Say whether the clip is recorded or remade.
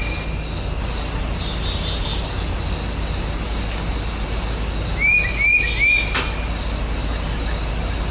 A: recorded